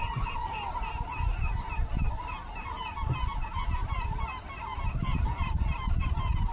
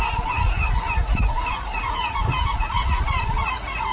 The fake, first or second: second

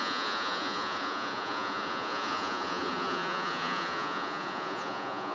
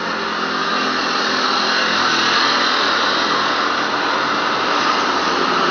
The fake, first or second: first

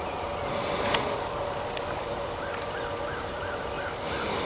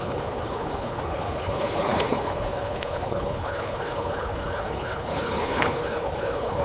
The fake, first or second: second